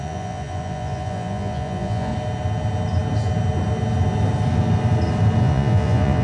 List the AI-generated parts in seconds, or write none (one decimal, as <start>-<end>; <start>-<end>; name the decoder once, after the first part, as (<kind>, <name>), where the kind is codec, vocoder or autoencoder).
0.0-2.1 (vocoder, Vocos); 5.4-6.2